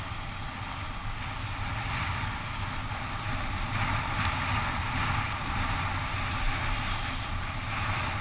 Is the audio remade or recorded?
recorded